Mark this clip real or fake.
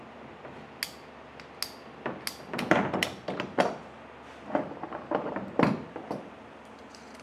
real